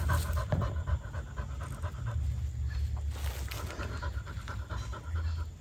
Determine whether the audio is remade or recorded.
recorded